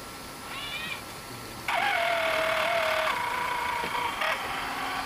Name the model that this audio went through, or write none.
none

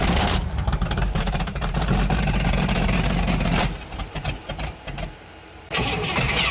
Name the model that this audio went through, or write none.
vocoder, BigVGAN v2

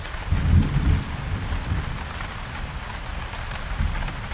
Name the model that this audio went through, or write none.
none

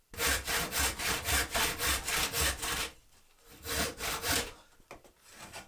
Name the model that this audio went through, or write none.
vocoder, BigVGAN v2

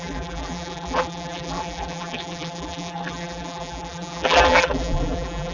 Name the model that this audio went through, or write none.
vocoder, BigVGAN v2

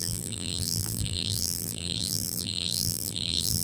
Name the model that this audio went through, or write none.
vocoder, BigVGAN v2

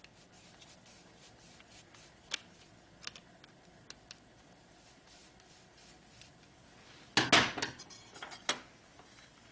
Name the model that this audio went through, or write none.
none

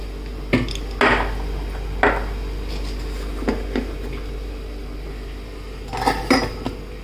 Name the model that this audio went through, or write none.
none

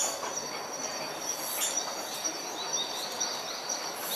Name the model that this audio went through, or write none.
none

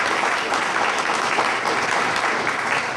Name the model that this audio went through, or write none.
none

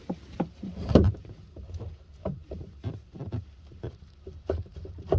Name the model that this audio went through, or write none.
vocoder, BigVGAN v2